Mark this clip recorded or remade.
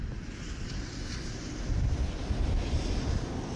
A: recorded